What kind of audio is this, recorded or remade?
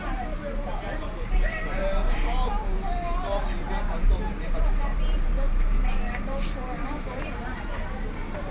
remade